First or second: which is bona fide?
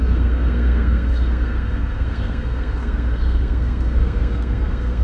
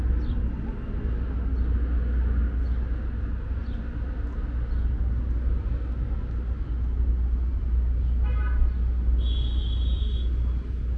second